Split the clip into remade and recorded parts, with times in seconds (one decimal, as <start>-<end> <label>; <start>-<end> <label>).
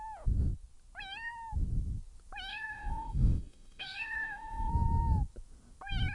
0.0-2.5 recorded; 2.5-4.7 remade; 4.7-6.1 recorded